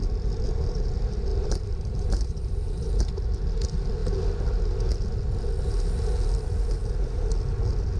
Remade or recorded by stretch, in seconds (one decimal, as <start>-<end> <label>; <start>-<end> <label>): 0.0-1.3 recorded; 1.3-3.1 remade; 3.1-8.0 recorded